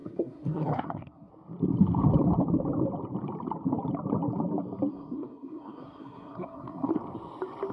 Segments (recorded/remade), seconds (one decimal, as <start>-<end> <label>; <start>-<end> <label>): 0.0-1.3 remade; 1.3-4.9 recorded; 4.9-6.9 remade; 6.9-7.7 recorded